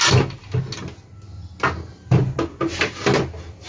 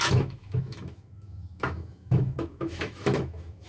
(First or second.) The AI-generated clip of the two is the second